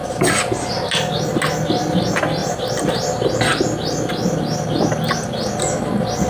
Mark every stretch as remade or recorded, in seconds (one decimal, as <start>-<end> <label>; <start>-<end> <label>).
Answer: 0.0-0.7 remade; 0.7-2.4 recorded; 2.4-3.3 remade; 3.3-6.3 recorded